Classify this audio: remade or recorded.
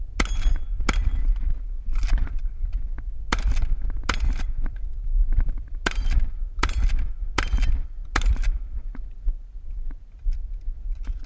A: recorded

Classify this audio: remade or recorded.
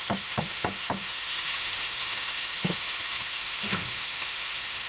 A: remade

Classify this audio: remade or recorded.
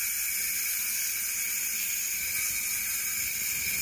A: recorded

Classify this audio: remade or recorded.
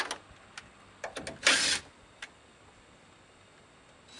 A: recorded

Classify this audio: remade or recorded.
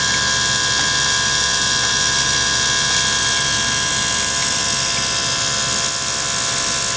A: recorded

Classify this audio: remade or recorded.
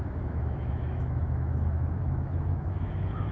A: remade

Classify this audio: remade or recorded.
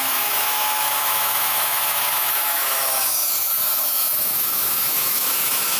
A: remade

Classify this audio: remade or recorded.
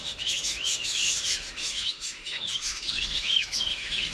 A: remade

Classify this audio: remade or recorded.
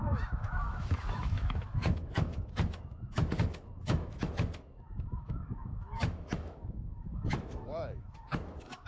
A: remade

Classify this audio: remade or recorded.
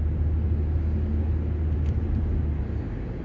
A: recorded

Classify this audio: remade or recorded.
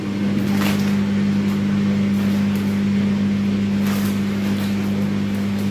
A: recorded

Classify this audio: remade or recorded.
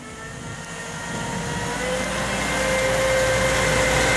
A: recorded